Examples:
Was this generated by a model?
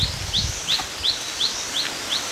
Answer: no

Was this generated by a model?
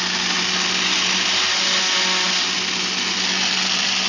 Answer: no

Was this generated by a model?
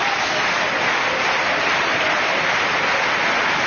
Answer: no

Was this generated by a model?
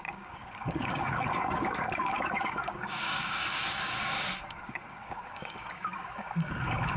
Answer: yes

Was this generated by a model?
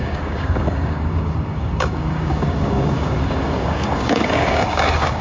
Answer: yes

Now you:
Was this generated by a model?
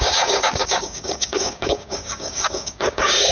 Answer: yes